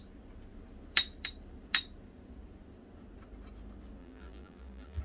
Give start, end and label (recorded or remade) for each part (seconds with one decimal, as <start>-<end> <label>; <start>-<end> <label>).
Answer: 0.0-4.0 recorded; 4.0-5.0 remade